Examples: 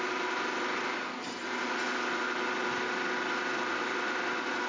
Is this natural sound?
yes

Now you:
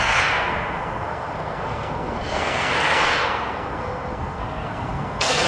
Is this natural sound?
no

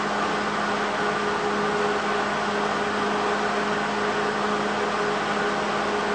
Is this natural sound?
yes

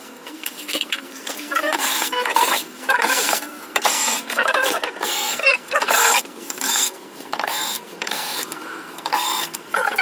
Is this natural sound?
no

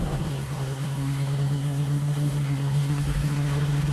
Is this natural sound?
no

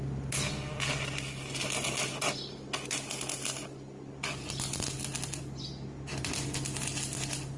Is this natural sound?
yes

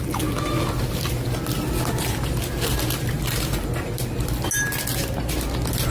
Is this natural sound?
yes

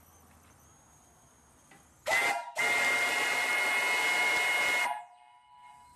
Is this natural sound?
yes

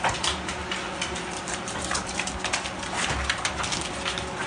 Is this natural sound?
yes